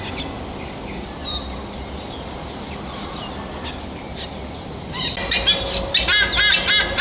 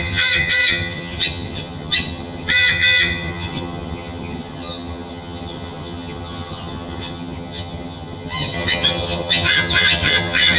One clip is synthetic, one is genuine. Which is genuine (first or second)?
first